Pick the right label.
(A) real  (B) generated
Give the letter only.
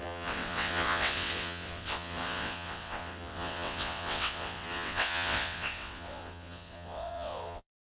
B